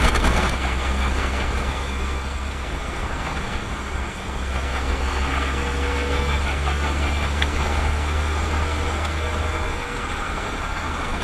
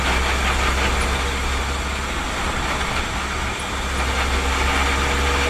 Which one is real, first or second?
second